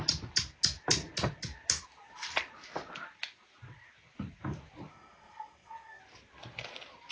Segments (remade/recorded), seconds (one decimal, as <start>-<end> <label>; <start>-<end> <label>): 0.0-4.9 recorded; 4.9-6.0 remade; 6.0-7.1 recorded